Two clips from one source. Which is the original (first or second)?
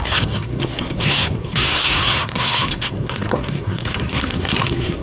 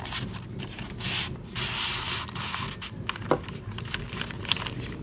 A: second